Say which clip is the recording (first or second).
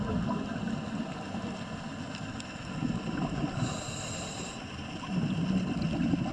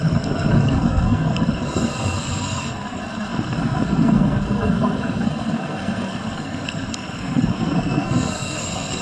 first